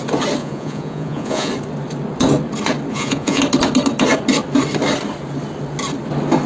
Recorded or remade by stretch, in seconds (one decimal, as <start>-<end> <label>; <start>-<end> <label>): 0.0-0.4 recorded; 0.4-1.5 remade; 1.5-2.9 recorded; 2.9-3.4 remade; 3.4-6.5 recorded

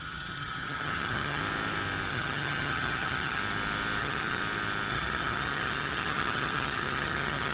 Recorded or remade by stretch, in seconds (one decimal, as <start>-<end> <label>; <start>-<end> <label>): 0.0-1.4 remade; 1.4-2.1 recorded; 2.1-3.4 remade; 3.4-4.0 recorded; 4.0-4.4 remade; 4.4-4.9 recorded; 4.9-7.5 remade

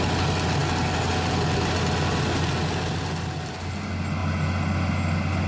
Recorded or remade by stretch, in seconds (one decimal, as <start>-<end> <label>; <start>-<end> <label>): 0.0-5.5 recorded

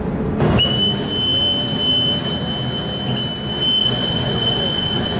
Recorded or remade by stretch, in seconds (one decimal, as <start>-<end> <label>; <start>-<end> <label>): 0.0-3.8 recorded; 3.8-5.2 remade